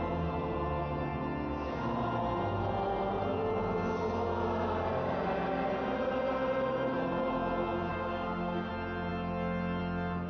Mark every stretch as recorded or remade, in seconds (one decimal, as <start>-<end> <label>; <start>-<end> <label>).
0.0-7.9 recorded; 7.9-8.7 remade; 8.7-10.3 recorded